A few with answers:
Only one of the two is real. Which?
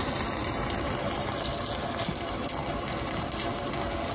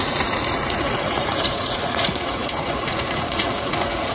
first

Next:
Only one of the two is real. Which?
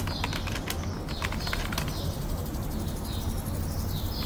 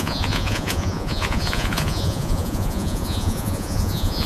first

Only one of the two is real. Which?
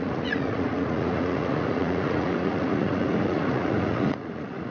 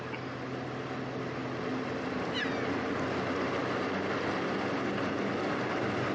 second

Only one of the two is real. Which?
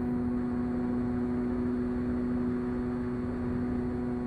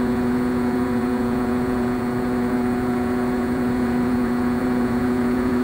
first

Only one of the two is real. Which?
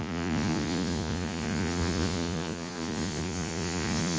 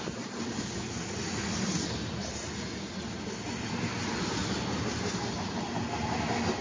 second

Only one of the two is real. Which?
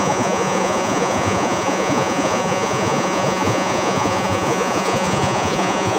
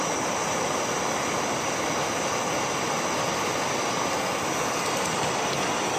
second